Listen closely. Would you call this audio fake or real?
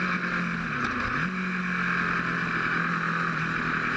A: real